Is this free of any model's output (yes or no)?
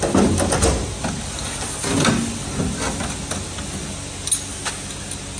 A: yes